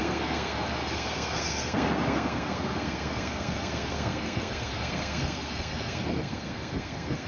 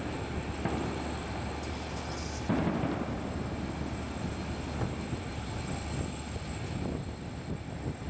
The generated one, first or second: first